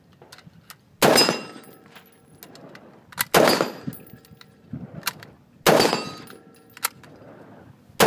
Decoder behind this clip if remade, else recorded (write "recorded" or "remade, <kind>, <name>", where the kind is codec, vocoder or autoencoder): recorded